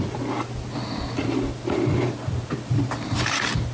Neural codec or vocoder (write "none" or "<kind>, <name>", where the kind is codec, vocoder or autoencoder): none